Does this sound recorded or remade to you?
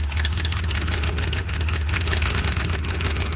remade